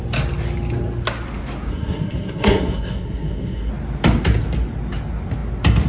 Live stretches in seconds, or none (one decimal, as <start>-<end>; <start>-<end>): 0.0-1.7; 3.7-5.9